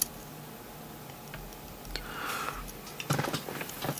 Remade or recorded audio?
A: recorded